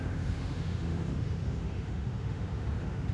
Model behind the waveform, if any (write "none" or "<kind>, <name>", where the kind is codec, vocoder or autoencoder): autoencoder, DAC-VAE